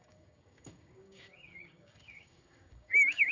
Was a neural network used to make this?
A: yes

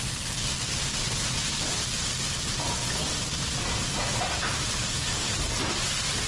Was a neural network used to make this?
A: no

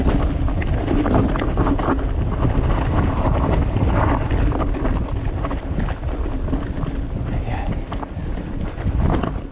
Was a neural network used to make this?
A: no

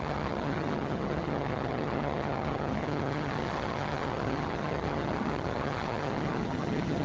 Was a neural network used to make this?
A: yes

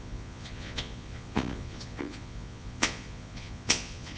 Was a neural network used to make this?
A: yes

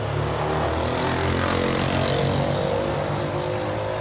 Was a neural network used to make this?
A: no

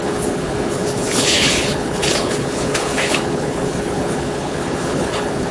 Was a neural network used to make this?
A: yes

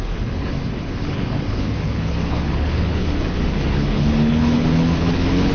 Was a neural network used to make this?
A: yes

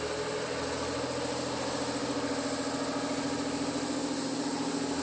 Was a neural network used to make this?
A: no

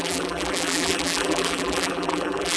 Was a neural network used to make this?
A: yes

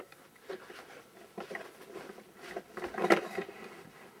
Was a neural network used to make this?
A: no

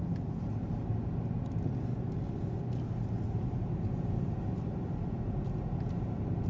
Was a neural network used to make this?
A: no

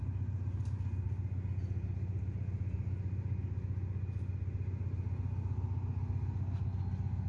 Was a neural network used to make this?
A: no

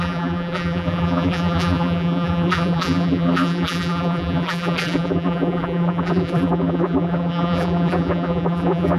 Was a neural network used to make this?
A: yes